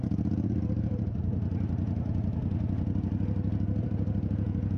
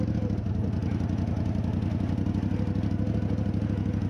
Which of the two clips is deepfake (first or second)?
first